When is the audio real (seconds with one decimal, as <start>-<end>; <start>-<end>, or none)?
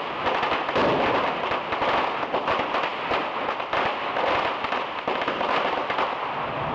0.0-6.7